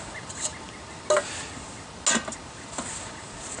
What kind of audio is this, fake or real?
real